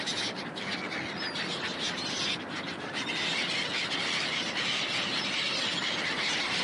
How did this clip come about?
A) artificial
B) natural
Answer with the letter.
B